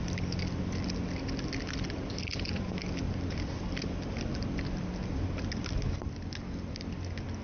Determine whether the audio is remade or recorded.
recorded